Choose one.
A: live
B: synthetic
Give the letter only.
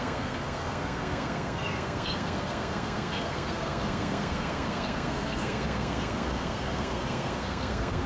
B